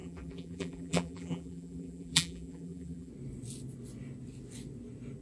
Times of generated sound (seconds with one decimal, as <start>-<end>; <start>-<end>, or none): 0.0-3.1